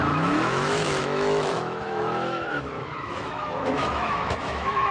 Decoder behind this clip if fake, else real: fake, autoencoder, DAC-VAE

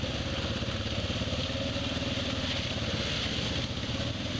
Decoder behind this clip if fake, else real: real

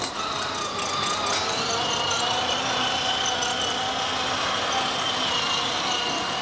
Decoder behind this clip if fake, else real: real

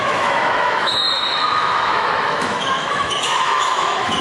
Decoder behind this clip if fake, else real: fake, autoencoder, DAC-VAE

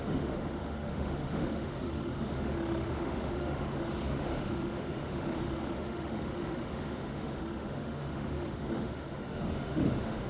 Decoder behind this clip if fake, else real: fake, autoencoder, DAC-VAE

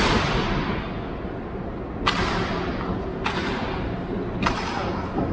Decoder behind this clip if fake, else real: real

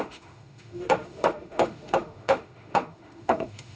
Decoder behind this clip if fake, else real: fake, autoencoder, DAC-VAE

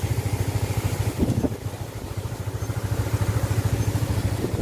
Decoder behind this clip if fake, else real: real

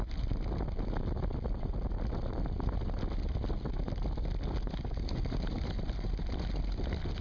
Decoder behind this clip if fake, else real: real